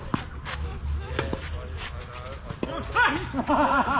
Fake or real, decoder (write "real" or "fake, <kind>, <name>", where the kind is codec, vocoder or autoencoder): real